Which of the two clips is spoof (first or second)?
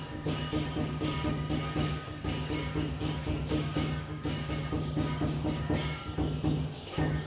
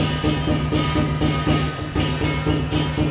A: first